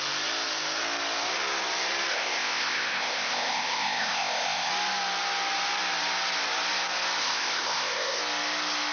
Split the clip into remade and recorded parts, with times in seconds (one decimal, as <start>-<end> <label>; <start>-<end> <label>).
0.0-2.1 recorded; 2.1-4.7 remade; 4.7-7.2 recorded; 7.2-8.2 remade; 8.2-8.9 recorded